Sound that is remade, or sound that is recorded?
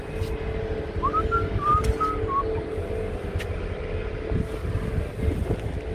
recorded